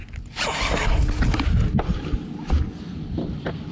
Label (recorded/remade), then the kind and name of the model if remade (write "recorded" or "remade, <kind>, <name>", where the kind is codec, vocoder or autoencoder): recorded